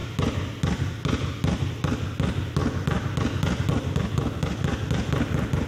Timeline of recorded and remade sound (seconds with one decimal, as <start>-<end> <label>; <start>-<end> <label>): 0.0-5.7 recorded